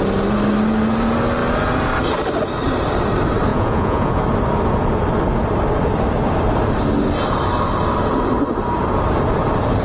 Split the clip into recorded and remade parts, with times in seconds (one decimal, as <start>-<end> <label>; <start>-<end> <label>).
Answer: 0.0-3.5 recorded; 3.5-4.1 remade; 4.1-9.8 recorded